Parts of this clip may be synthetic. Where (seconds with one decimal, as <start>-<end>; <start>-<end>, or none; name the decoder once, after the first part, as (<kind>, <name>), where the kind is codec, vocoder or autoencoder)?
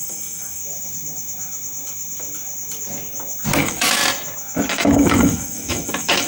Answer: 0.0-0.6 (autoencoder, DAC-VAE); 3.6-4.0; 4.7-6.3